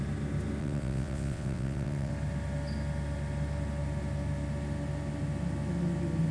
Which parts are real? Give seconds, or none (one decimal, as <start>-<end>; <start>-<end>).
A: 0.0-0.6; 2.1-6.3